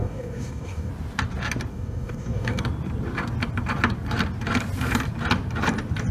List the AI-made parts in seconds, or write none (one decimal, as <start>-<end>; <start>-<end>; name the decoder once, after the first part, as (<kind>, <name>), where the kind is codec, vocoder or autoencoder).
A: 0.0-0.9 (codec, DAC); 1.7-2.6